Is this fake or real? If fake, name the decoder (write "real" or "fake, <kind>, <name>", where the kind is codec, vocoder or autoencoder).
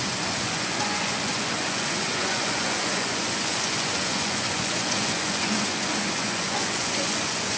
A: fake, vocoder, Vocos